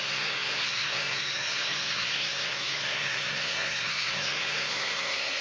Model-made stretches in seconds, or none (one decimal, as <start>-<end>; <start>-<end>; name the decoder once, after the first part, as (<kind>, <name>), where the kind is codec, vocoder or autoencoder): 0.0-5.4 (codec, SNAC)